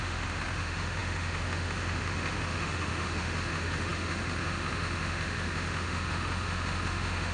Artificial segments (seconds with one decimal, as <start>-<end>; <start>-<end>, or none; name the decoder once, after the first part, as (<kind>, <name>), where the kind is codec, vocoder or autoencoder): 0.0-7.3 (autoencoder, DAC-VAE)